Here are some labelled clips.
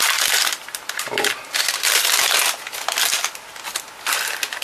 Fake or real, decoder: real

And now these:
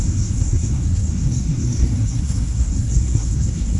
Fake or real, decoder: fake, codec, SNAC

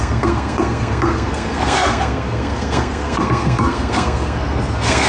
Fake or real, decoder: fake, codec, SNAC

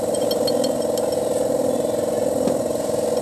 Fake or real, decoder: real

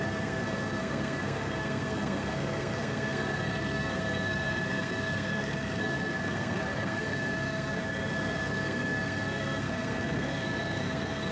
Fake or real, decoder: fake, codec, SNAC